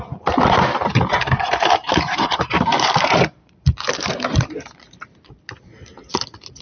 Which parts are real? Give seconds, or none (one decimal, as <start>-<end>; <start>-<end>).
0.0-1.2; 4.8-6.6